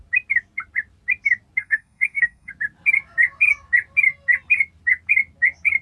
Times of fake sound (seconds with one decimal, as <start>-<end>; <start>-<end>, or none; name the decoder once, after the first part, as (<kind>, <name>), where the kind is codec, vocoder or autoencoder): 1.6-2.5 (codec, SNAC)